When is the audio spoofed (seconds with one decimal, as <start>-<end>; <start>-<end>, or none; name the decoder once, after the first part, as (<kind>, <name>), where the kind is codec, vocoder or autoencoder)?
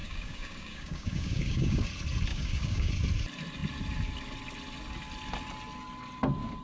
0.0-1.9 (codec, DAC); 2.3-2.9